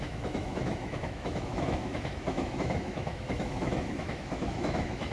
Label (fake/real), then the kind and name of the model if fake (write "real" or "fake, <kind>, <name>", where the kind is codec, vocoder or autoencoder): fake, autoencoder, DAC-VAE